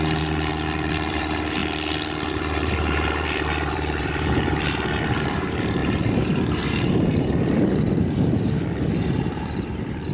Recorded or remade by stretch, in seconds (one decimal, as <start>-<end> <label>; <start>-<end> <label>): 0.0-0.5 remade; 0.5-1.1 recorded; 1.1-1.6 remade; 1.6-2.3 recorded; 2.3-10.1 remade